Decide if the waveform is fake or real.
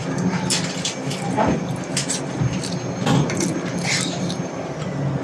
real